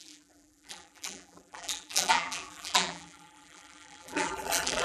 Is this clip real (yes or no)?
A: no